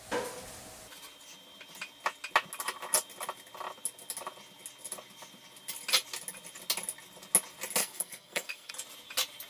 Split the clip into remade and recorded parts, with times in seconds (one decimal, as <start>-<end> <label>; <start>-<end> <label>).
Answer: 0.0-7.8 recorded; 7.8-8.7 remade; 8.7-9.5 recorded